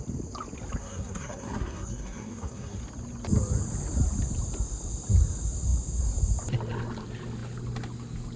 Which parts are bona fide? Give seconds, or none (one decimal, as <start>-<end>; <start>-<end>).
0.0-0.8; 2.8-8.4